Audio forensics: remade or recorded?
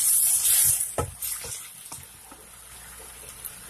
recorded